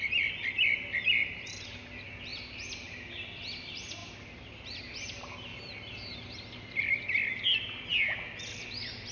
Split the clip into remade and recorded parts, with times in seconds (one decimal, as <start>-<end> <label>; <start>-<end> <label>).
0.0-4.0 recorded; 4.0-4.8 remade; 4.8-9.1 recorded